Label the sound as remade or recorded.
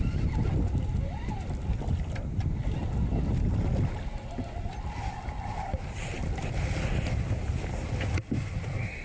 recorded